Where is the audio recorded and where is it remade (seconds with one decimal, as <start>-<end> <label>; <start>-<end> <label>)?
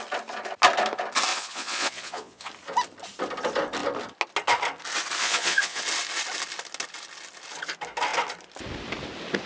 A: 0.0-1.3 recorded; 1.3-2.5 remade; 2.5-5.2 recorded; 5.2-5.8 remade; 5.8-9.5 recorded